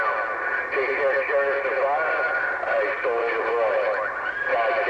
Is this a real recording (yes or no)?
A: yes